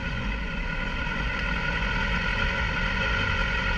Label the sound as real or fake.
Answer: fake